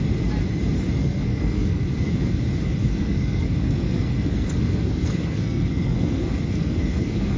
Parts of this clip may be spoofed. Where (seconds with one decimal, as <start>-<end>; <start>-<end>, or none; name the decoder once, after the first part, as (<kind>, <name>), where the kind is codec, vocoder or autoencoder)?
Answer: 1.0-2.4 (codec, SNAC); 2.8-7.4